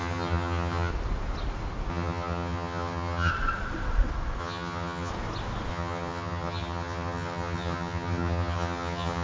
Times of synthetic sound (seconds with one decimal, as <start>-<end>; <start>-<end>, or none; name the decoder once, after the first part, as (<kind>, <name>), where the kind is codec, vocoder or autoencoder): 0.0-0.9 (vocoder, HiFi-GAN); 1.9-3.3; 4.4-5.1; 5.7-9.2